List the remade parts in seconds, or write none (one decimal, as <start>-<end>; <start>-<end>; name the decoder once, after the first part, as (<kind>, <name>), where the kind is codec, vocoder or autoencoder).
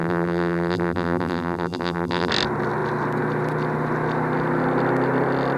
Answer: 0.0-2.3 (vocoder, BigVGAN v2)